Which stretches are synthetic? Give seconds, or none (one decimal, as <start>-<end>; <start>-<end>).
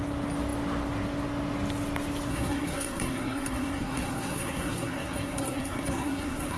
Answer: 2.3-6.6